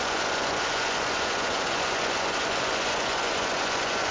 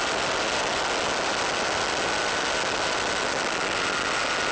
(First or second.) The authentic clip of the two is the second